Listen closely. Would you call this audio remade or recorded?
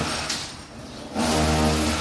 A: recorded